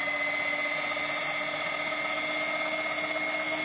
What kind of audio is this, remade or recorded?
recorded